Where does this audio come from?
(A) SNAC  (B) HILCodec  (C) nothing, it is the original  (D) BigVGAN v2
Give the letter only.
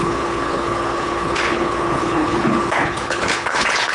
B